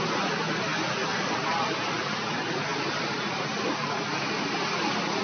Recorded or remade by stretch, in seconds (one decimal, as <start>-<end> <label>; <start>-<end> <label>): 0.0-2.7 recorded; 2.7-4.3 remade; 4.3-5.2 recorded

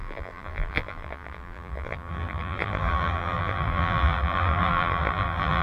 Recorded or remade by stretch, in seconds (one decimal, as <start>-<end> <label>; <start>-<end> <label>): 0.0-5.6 remade

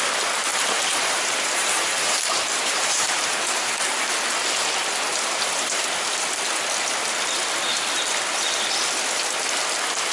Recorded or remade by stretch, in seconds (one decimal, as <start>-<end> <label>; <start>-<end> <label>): 0.0-0.5 recorded; 0.5-4.0 remade; 4.0-5.1 recorded; 5.1-5.8 remade; 5.8-10.1 recorded

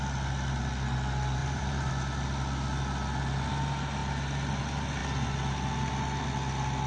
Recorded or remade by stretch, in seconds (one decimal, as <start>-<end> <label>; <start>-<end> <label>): 0.0-1.4 recorded; 1.4-1.9 remade; 1.9-6.9 recorded

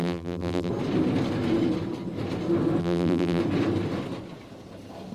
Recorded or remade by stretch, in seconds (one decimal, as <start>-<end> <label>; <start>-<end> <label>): 0.0-0.7 remade; 0.7-2.8 recorded; 2.8-3.4 remade; 3.4-5.1 recorded

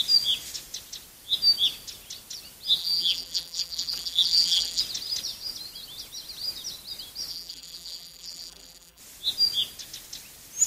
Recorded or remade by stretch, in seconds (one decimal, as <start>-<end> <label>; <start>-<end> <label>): 0.0-2.8 recorded; 2.8-4.8 remade; 4.8-7.3 recorded; 7.3-9.0 remade; 9.0-10.7 recorded

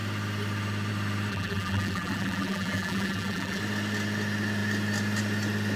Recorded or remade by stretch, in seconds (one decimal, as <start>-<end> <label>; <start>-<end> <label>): 0.0-1.3 recorded; 1.3-3.6 remade; 3.6-5.8 recorded

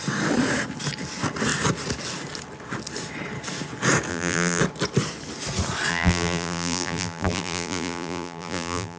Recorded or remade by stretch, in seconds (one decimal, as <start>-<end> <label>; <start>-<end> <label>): 0.0-4.1 recorded; 4.1-4.6 remade; 4.6-5.9 recorded; 5.9-9.0 remade